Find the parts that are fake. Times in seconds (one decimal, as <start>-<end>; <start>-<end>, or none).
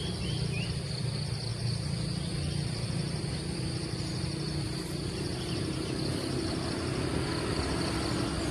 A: none